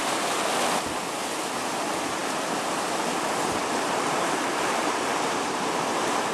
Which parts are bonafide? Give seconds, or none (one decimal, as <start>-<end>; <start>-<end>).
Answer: 0.0-6.3